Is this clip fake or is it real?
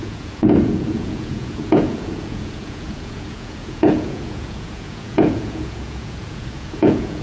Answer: fake